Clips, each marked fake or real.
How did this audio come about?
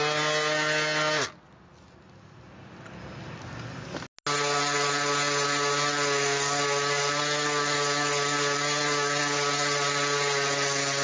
real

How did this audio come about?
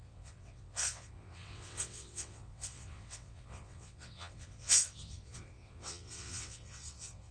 fake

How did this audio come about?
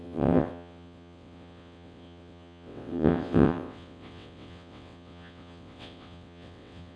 fake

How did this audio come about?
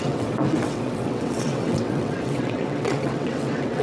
fake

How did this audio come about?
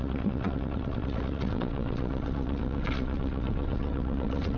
fake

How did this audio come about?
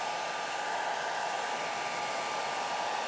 real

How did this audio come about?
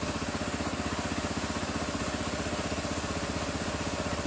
real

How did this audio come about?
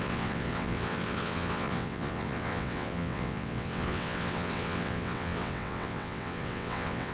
fake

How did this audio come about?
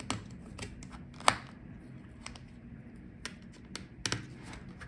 real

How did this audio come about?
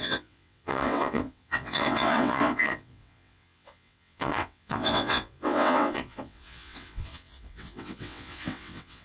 fake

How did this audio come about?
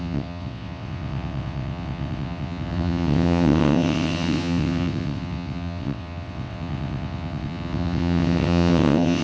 fake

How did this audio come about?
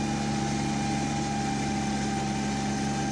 real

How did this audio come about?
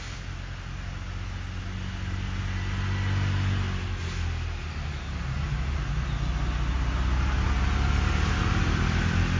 real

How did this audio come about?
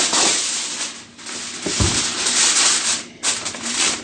real